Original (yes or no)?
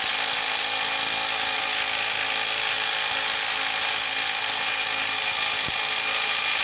yes